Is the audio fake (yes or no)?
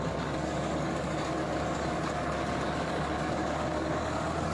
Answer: yes